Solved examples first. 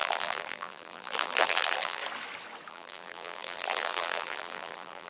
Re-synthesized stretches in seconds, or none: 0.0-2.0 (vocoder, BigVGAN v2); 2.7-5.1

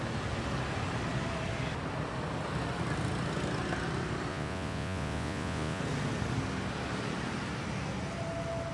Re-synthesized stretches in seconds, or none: 4.3-5.8 (vocoder, Vocos)

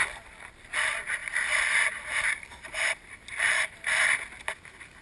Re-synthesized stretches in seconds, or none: 1.2-4.2 (vocoder, BigVGAN v2)

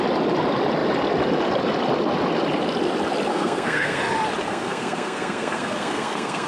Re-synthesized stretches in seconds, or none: 3.3-4.0 (codec, SNAC); 4.5-6.5

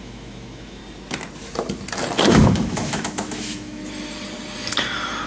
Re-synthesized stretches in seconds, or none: 0.0-0.8 (autoencoder, DAC-VAE); 2.3-3.8

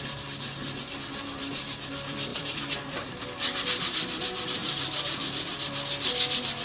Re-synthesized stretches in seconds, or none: 2.3-3.2 (vocoder, BigVGAN v2); 4.6-5.2

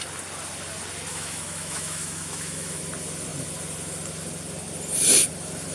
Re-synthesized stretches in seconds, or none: 1.1-2.8 (autoencoder, DAC-VAE)

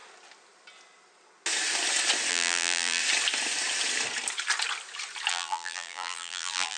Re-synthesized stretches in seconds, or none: 2.3-3.0 (vocoder, BigVGAN v2); 5.3-6.8